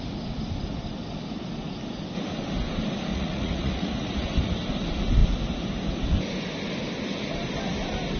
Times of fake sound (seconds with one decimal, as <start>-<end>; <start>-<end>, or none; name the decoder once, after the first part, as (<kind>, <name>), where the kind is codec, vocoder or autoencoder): 3.1-4.2 (vocoder, Vocos)